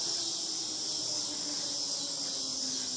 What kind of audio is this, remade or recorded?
recorded